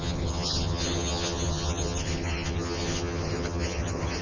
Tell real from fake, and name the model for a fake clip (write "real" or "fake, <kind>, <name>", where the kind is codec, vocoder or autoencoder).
fake, vocoder, HiFi-GAN